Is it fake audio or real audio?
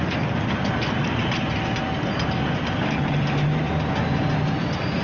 real